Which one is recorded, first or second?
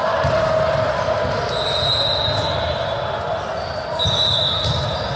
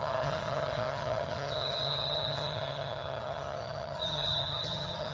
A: first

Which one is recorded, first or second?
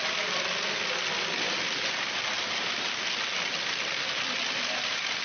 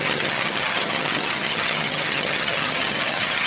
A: first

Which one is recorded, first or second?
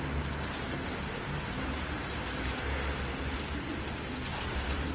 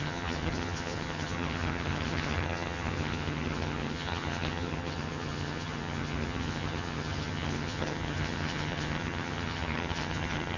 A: first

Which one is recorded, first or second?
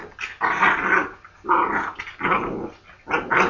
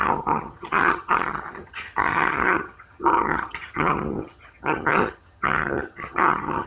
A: first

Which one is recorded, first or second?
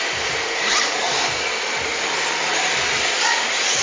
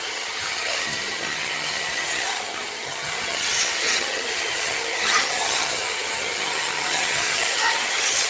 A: first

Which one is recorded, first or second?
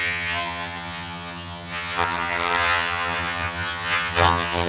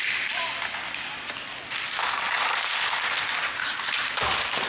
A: second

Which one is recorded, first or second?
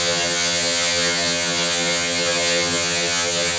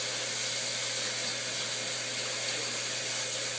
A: second